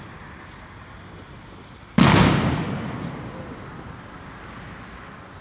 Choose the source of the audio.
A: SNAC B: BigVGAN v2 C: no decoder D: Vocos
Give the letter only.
C